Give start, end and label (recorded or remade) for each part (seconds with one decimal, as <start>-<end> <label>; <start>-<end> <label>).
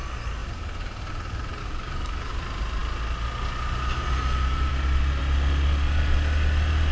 0.0-1.6 recorded; 1.6-2.3 remade; 2.3-6.9 recorded